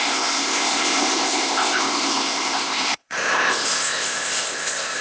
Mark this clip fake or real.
fake